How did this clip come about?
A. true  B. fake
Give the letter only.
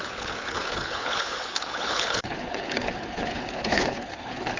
B